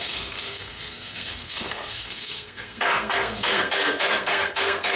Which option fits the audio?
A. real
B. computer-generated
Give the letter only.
B